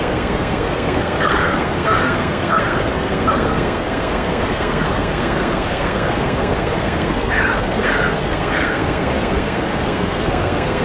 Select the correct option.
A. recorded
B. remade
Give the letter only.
B